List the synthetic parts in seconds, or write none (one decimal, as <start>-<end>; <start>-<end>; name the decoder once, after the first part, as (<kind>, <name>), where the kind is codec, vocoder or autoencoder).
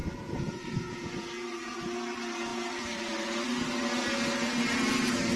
0.0-1.3 (vocoder, Vocos)